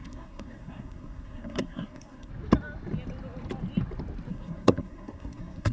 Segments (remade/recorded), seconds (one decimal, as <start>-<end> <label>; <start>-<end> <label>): 0.0-2.3 remade; 2.3-4.3 recorded; 4.3-5.7 remade